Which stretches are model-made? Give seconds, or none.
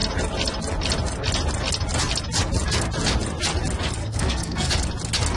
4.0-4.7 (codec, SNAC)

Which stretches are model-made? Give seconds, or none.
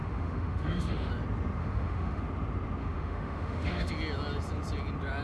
0.0-1.1 (autoencoder, DAC-VAE); 1.6-2.2; 2.8-3.9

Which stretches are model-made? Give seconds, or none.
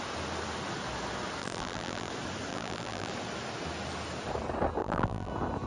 1.4-2.1 (vocoder, BigVGAN v2); 2.5-3.1; 4.8-5.3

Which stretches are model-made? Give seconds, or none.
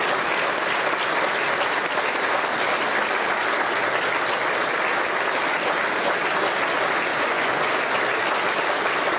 7.1-7.7 (vocoder, Vocos)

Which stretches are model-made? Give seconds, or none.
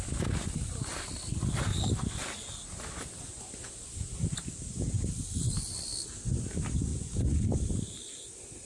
6.9-7.4 (vocoder, Vocos)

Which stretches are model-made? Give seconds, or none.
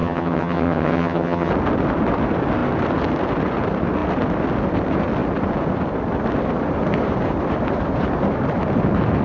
0.0-1.5 (vocoder, HiFi-GAN)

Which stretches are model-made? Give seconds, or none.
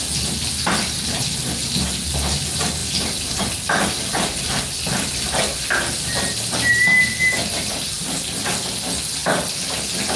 none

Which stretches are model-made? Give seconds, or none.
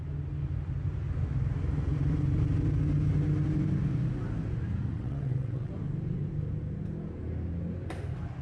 4.9-5.7 (vocoder, WaveNeXt)